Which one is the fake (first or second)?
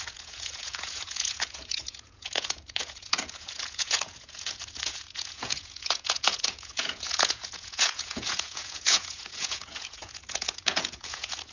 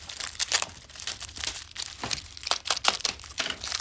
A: first